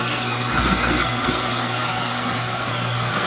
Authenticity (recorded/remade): remade